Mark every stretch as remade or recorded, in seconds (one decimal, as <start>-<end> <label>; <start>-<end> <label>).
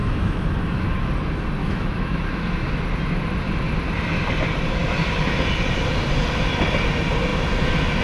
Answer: 0.0-1.1 remade; 1.1-1.6 recorded; 1.6-2.8 remade; 2.8-8.0 recorded